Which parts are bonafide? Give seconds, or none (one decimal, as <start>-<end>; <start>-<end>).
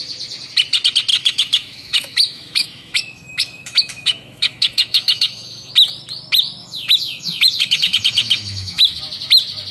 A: 0.0-1.1; 5.7-6.6; 9.0-9.7